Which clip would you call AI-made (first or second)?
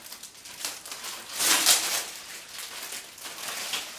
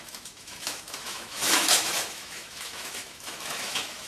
second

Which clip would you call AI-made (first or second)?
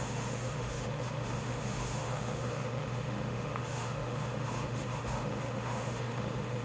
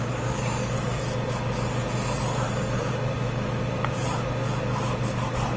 first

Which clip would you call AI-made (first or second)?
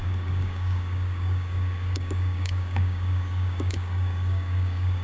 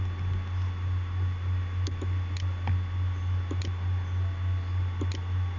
first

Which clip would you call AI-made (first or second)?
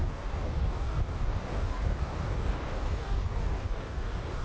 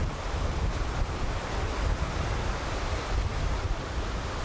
first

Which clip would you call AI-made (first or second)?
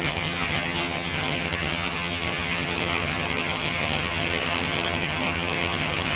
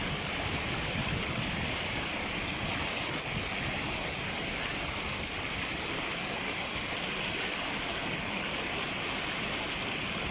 first